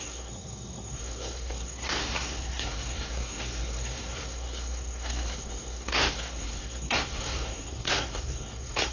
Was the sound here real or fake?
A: fake